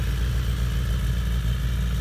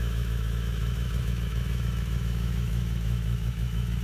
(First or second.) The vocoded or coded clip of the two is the second